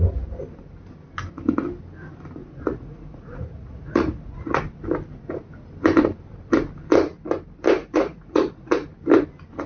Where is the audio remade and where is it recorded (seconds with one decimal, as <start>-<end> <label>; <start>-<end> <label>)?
0.0-2.4 recorded; 2.4-4.6 remade; 4.6-7.8 recorded; 7.8-8.9 remade; 8.9-9.7 recorded

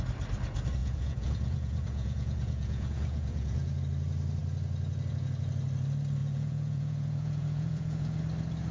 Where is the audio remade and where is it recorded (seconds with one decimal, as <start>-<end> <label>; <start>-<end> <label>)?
0.0-0.8 recorded; 0.8-3.8 remade; 3.8-6.2 recorded; 6.2-8.2 remade; 8.2-8.7 recorded

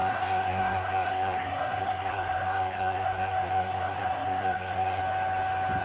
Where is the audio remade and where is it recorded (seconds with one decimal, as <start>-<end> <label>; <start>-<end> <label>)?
0.0-5.0 remade; 5.0-5.8 recorded

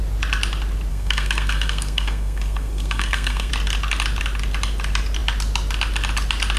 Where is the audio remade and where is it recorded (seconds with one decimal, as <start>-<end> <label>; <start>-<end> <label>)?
0.0-0.9 recorded; 0.9-3.5 remade; 3.5-6.6 recorded

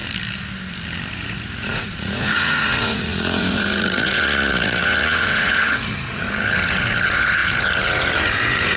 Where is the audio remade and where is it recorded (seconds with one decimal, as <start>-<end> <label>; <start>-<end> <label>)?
0.0-1.1 recorded; 1.1-8.8 remade

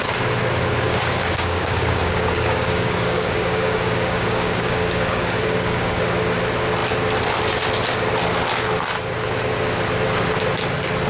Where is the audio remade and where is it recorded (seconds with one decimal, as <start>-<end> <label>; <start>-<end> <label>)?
0.0-0.9 recorded; 0.9-6.0 remade; 6.0-11.1 recorded

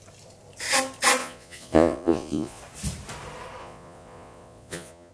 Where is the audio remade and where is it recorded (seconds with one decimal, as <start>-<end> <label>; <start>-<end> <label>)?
0.0-1.2 recorded; 1.2-2.6 remade; 2.6-3.6 recorded; 3.6-5.1 remade

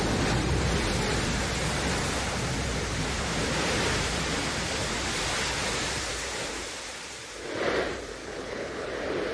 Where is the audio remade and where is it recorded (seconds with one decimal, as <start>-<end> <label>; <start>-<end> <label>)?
0.0-8.2 recorded; 8.2-8.9 remade; 8.9-9.3 recorded